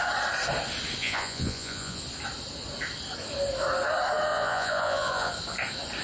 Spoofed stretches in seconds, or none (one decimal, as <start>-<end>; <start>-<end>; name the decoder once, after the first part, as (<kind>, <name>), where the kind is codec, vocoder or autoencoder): 1.0-2.0 (vocoder, Vocos); 4.3-5.3